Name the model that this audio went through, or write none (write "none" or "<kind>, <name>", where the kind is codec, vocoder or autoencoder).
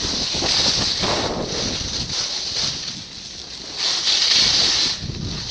none